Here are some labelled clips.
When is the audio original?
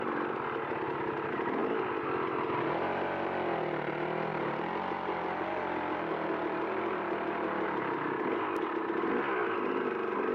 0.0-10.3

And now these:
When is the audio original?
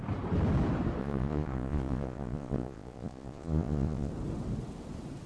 0.0-1.0; 4.1-5.3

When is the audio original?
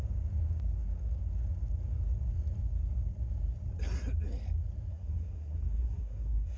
0.0-4.9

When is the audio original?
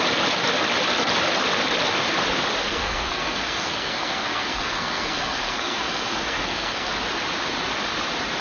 0.0-2.7; 6.9-8.4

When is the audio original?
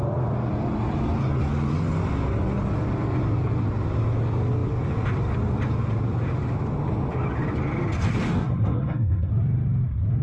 0.0-8.4; 9.3-10.2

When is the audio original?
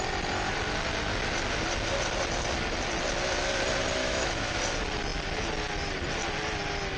0.0-4.0; 4.6-7.0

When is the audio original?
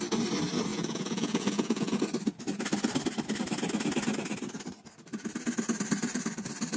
0.0-0.7; 2.0-6.8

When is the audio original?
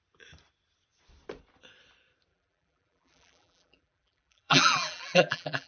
0.0-2.3